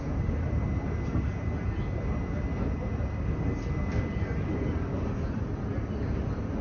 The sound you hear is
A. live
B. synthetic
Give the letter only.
A